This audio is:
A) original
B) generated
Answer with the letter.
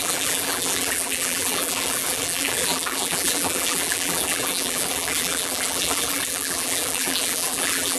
B